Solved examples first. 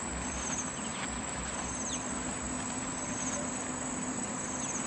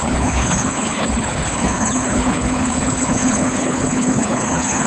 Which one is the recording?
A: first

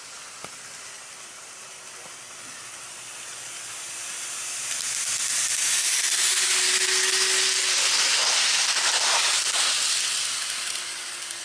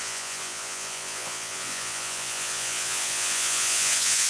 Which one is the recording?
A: first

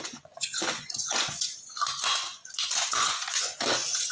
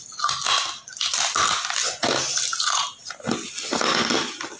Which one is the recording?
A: second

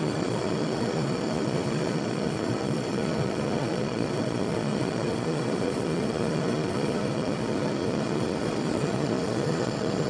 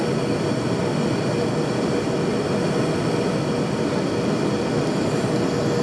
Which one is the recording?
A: second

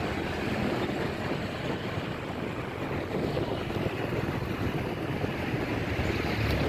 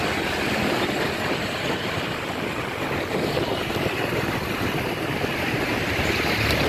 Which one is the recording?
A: first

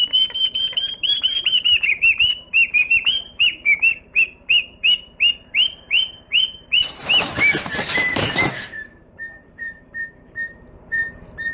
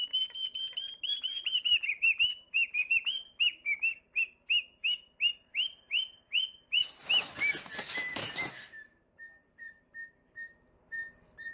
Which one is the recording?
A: second